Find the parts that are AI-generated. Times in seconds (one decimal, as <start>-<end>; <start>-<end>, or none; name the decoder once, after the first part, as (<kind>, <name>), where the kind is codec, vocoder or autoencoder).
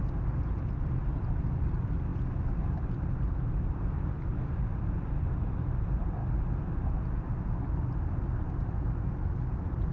none